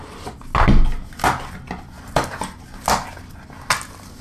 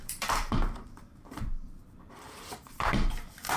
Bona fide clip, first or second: first